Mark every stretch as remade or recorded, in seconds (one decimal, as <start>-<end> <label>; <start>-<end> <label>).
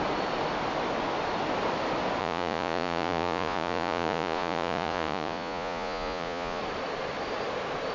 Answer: 0.0-2.2 recorded; 2.2-6.6 remade; 6.6-7.9 recorded